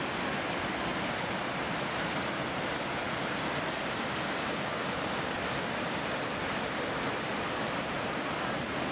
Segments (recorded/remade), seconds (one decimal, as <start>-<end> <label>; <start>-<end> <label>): 0.0-3.0 recorded; 3.0-7.5 remade; 7.5-8.9 recorded